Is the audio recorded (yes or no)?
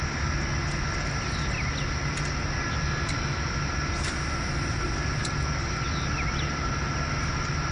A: yes